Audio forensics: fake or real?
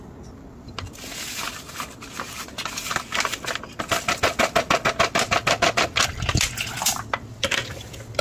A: real